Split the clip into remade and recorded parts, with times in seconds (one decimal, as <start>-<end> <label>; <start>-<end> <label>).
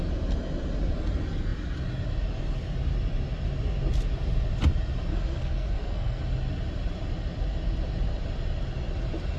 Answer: 0.0-5.1 recorded; 5.1-6.2 remade; 6.2-9.4 recorded